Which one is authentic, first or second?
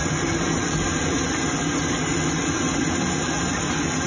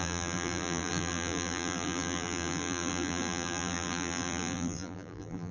first